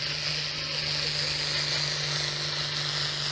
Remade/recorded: recorded